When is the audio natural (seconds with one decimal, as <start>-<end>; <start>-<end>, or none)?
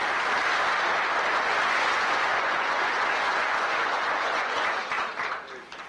0.0-1.3; 4.8-5.9